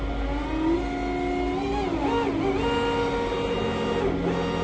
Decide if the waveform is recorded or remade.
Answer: recorded